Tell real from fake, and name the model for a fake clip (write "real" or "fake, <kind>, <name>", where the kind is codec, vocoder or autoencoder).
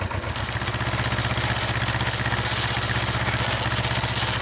real